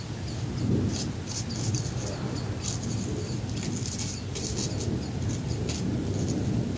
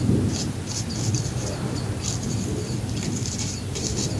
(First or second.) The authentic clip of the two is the first